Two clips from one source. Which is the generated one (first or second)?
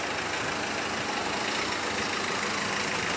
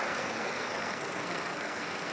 second